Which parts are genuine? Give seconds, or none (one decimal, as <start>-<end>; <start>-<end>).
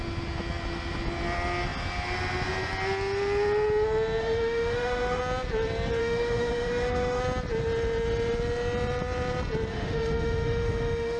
0.0-4.2; 5.2-6.0; 7.2-9.7